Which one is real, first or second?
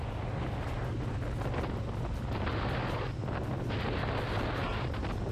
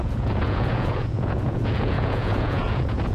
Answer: first